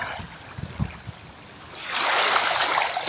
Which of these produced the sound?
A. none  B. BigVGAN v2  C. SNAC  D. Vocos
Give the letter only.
B